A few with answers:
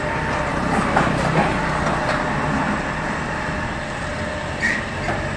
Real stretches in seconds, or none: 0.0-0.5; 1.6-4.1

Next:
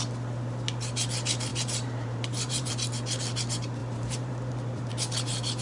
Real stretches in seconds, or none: 0.0-1.5; 2.7-3.8; 4.9-5.6

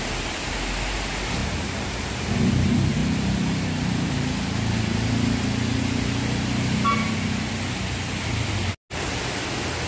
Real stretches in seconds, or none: 0.0-1.4; 2.3-3.0; 4.1-9.9